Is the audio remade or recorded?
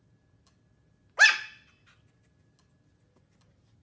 recorded